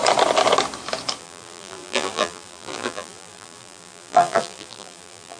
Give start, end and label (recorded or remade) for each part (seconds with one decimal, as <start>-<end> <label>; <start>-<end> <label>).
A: 0.0-1.2 recorded; 1.2-5.4 remade